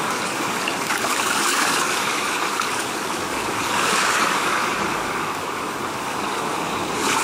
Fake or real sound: fake